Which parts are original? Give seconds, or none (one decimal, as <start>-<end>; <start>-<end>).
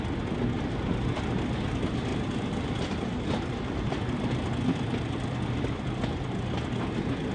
0.0-2.1; 6.5-7.3